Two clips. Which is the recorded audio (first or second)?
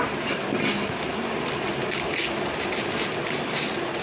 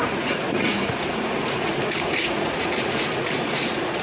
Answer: first